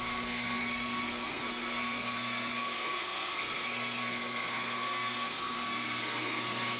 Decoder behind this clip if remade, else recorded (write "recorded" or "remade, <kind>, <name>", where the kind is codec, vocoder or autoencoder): remade, codec, SNAC